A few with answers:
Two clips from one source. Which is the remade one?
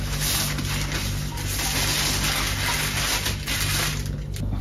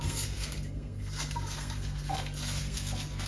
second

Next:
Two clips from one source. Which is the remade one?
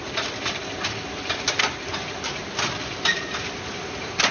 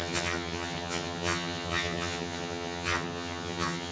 second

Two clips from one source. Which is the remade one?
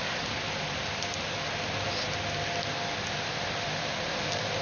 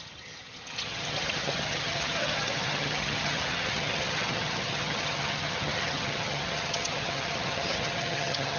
second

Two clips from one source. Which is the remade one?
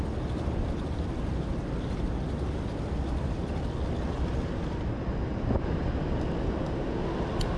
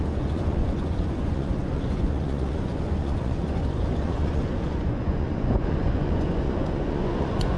second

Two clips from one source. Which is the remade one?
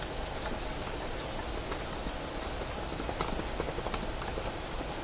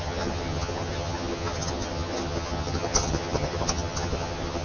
second